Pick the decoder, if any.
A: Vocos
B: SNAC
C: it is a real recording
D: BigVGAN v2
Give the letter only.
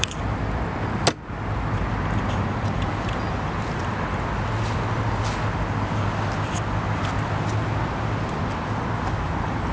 C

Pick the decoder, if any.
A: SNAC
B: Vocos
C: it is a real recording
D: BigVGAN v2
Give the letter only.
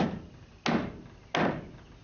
C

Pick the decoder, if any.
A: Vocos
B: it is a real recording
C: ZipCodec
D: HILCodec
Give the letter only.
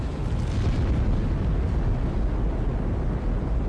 B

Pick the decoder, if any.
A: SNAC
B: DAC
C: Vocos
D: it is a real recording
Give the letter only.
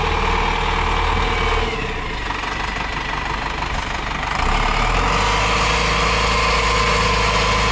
D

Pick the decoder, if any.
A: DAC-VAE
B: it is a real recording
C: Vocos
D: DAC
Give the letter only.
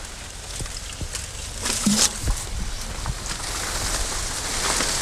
B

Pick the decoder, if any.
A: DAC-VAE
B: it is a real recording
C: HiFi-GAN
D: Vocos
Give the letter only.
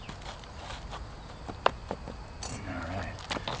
B